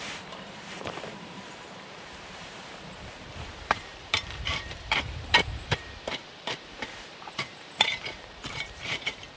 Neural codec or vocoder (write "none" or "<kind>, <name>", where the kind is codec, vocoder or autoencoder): vocoder, BigVGAN v2